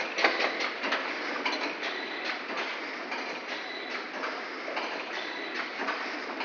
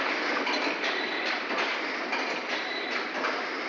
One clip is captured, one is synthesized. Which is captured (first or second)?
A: first